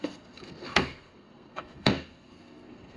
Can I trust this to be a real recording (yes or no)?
no